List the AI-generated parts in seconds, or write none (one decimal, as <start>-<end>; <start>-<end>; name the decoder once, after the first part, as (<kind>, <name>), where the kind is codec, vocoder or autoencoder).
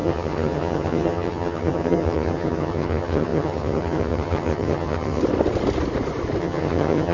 0.0-5.2 (vocoder, HiFi-GAN); 6.4-7.1